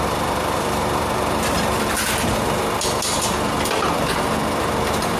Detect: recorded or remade remade